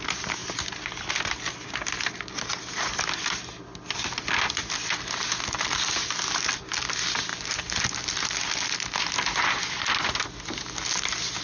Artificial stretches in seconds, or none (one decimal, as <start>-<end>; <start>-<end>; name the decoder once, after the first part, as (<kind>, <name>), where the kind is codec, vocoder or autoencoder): none